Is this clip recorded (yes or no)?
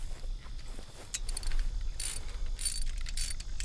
yes